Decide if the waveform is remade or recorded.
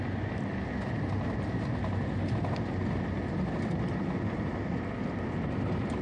recorded